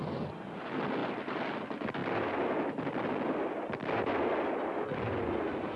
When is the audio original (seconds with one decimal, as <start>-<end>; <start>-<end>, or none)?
0.0-5.8